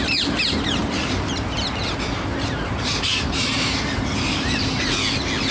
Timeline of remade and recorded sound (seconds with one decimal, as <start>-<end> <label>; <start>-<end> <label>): 0.0-0.8 recorded; 0.8-1.9 remade; 1.9-2.3 recorded; 2.3-4.8 remade; 4.8-5.5 recorded